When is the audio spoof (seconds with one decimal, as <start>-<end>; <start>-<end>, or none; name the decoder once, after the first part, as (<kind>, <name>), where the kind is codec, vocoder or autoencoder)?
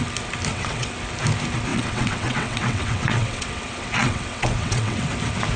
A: 0.5-1.0 (vocoder, WaveNeXt); 1.7-5.1